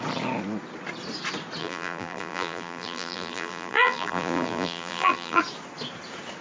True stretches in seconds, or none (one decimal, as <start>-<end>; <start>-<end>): 0.0-1.6; 5.4-6.4